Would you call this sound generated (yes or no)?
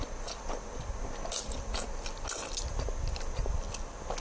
no